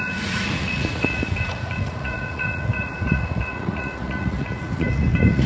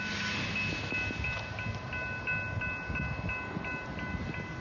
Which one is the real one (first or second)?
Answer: second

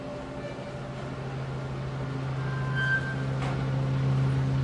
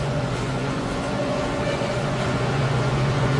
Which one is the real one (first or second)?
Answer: first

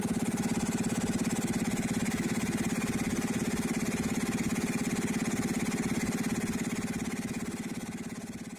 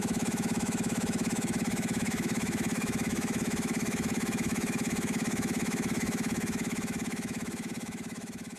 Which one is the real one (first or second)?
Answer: first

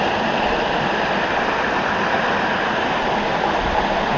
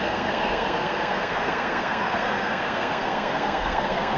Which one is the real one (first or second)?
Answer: first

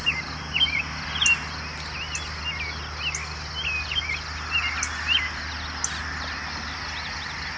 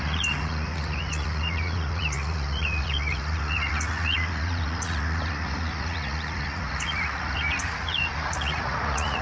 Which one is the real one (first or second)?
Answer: first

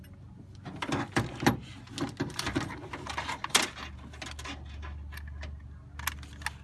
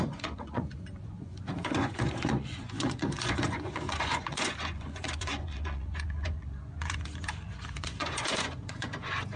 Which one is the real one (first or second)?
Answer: first